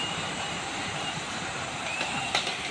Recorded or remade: remade